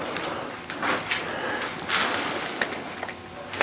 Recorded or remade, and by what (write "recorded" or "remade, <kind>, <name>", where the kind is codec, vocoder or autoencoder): recorded